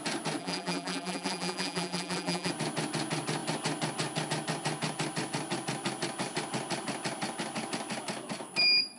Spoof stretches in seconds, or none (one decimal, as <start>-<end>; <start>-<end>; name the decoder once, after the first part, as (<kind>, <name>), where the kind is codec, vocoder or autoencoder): 0.4-2.5 (vocoder, BigVGAN v2)